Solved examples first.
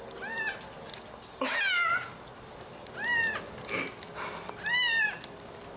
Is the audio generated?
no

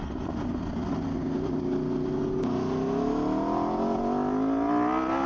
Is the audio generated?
no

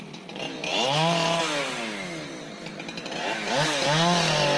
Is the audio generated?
no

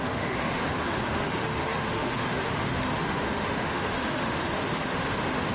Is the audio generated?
yes